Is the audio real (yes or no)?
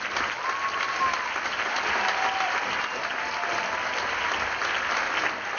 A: yes